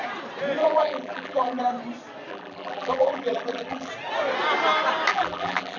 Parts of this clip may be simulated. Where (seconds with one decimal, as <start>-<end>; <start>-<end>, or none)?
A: 0.6-1.6; 2.3-3.9; 5.1-5.8